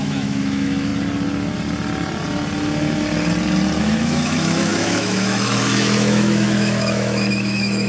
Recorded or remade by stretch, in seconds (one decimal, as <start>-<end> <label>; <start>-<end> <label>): 0.0-0.9 remade; 0.9-3.8 recorded; 3.8-7.9 remade